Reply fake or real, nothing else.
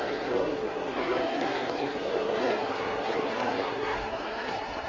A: fake